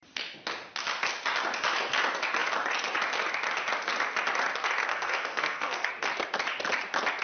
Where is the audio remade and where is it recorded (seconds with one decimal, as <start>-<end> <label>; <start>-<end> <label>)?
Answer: 0.0-4.9 recorded; 4.9-5.9 remade; 5.9-7.2 recorded